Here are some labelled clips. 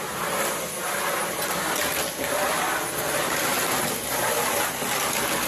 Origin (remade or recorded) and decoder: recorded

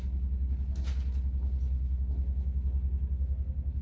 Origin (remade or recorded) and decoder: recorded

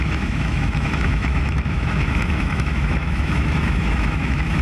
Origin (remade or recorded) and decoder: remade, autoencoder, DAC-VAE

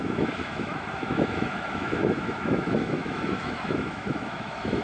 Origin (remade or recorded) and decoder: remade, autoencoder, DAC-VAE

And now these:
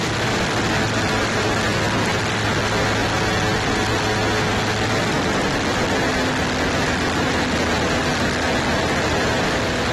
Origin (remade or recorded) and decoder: recorded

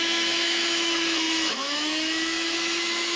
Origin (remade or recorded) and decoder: remade, autoencoder, DAC-VAE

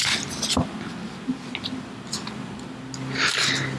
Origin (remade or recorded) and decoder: recorded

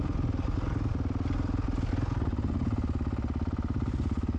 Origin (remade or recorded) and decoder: recorded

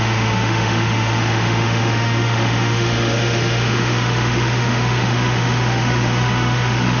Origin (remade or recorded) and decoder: remade, autoencoder, DAC-VAE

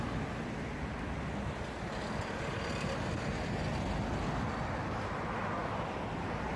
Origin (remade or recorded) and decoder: recorded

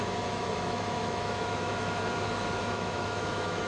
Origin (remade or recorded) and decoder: remade, autoencoder, DAC-VAE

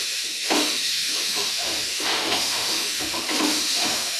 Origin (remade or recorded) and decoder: remade, autoencoder, DAC-VAE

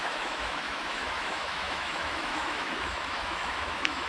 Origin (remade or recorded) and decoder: remade, autoencoder, DAC-VAE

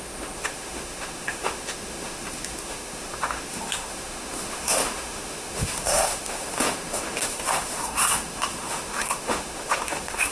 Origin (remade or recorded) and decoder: remade, autoencoder, DAC-VAE